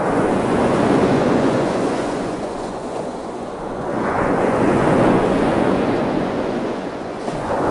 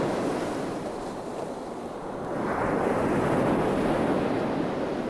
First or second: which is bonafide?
second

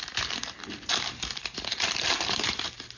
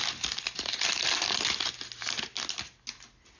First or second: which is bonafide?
second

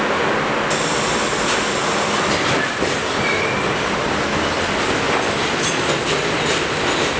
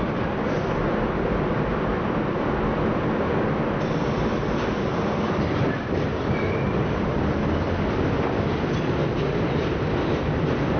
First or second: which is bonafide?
first